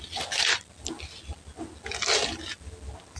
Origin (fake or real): real